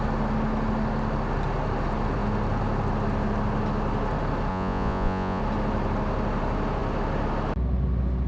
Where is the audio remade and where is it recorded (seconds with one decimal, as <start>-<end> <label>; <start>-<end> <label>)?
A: 0.0-4.5 recorded; 4.5-5.4 remade; 5.4-8.3 recorded